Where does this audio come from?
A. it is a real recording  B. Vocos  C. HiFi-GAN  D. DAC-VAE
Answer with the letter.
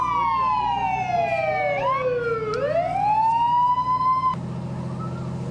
A